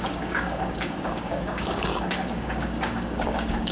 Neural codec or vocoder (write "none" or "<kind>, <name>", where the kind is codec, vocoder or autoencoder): codec, DAC